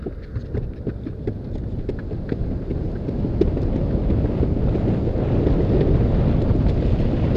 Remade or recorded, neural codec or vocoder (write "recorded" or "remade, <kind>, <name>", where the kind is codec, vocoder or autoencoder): recorded